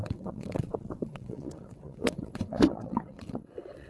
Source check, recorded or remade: remade